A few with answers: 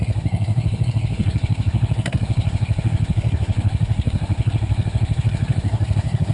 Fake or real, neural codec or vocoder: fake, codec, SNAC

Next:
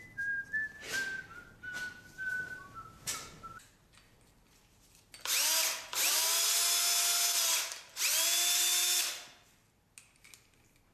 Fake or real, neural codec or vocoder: real